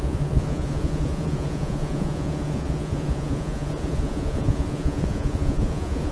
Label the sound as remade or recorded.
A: remade